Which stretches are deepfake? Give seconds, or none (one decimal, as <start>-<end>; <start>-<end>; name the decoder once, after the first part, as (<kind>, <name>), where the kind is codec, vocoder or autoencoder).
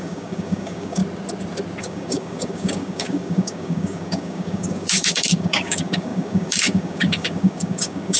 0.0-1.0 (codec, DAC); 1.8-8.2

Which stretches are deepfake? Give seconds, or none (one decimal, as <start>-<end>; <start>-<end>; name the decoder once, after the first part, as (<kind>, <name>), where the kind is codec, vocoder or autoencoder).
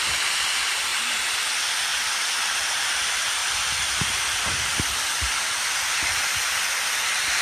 0.0-0.9 (vocoder, BigVGAN v2); 1.5-7.4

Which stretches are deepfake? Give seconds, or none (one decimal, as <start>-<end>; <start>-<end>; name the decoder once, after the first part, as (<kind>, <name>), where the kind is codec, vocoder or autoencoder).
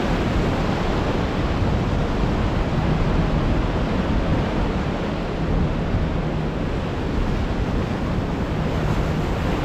none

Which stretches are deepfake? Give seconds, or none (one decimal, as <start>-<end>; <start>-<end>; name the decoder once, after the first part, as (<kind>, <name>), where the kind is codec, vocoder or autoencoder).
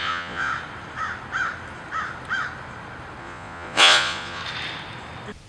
0.0-0.5 (vocoder, Vocos); 3.2-4.4